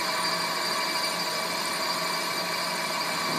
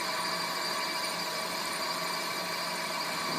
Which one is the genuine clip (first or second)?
first